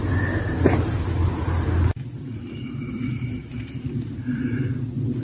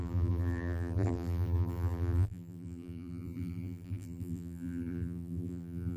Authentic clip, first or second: first